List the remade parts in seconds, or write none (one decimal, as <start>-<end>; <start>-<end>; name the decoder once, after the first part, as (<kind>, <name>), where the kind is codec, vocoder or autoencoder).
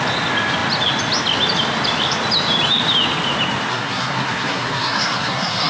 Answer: 3.7-5.7 (codec, SNAC)